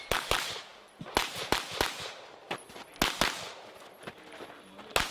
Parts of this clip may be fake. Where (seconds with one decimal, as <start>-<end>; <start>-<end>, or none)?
none